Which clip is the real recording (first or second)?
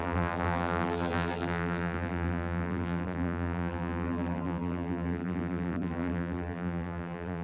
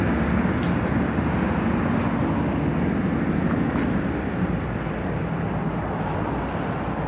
second